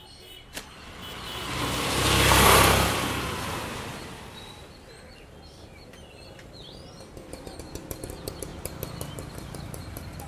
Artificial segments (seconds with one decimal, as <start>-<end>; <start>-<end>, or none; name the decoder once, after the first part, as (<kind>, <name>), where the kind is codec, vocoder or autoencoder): 0.0-3.3 (vocoder, BigVGAN v2)